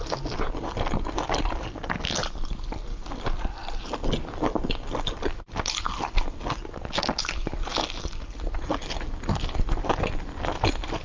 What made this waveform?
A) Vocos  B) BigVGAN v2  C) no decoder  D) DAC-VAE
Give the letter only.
C